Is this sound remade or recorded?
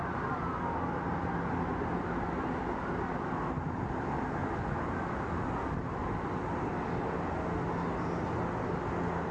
recorded